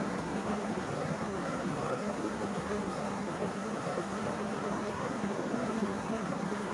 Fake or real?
fake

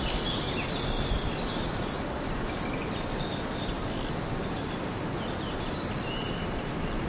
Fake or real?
real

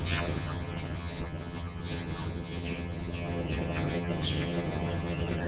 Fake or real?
fake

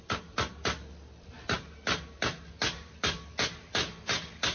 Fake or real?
real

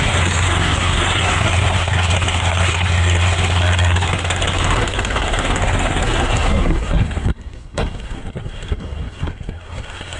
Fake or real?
fake